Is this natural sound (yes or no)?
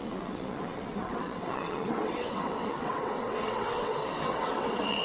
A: no